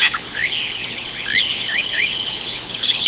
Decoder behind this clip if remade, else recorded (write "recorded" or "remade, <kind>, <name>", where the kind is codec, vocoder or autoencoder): remade, codec, HILCodec